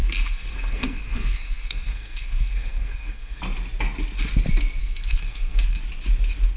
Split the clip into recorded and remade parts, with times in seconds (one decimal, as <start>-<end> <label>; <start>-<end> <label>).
0.0-3.4 remade; 3.4-4.8 recorded; 4.8-5.8 remade; 5.8-6.6 recorded